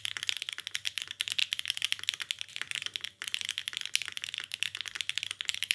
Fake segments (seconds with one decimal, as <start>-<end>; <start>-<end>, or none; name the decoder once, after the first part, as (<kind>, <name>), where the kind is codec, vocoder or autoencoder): none